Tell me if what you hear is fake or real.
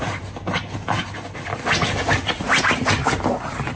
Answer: real